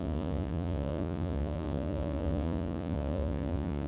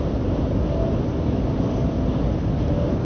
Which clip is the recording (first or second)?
second